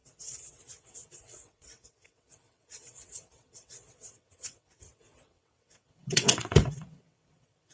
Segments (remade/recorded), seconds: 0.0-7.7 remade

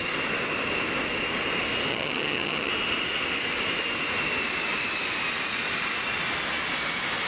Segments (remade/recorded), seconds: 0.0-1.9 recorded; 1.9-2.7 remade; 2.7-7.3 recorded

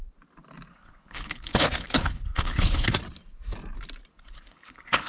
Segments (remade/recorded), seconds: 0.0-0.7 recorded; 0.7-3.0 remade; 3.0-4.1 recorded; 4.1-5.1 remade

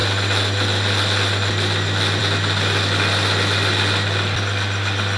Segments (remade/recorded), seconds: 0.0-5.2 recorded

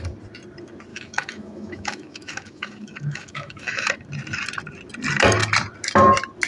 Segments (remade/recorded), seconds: 0.0-0.9 recorded; 0.9-3.9 remade; 3.9-6.5 recorded

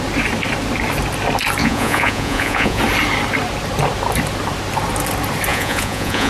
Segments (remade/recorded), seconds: 0.0-1.6 recorded; 1.6-2.8 remade; 2.8-5.5 recorded; 5.5-6.3 remade

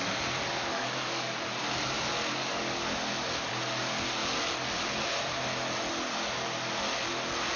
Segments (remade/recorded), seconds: 0.0-0.5 recorded; 0.5-1.4 remade; 1.4-2.4 recorded; 2.4-3.5 remade; 3.5-7.6 recorded

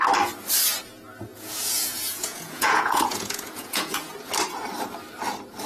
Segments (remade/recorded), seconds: 0.0-1.3 recorded; 1.3-4.0 remade; 4.0-5.7 recorded